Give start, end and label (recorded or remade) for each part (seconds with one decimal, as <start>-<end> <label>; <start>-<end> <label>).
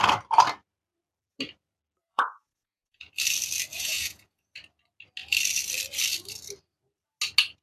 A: 0.0-2.1 recorded; 2.1-3.1 remade; 3.1-3.7 recorded; 3.7-4.5 remade; 4.5-7.6 recorded